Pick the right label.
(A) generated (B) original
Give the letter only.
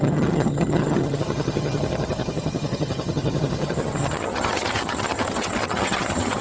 A